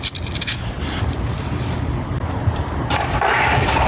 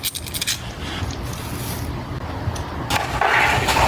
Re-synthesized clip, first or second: first